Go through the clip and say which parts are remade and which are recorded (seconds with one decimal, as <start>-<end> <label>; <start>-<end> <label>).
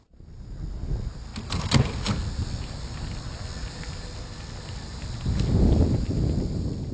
0.0-6.9 recorded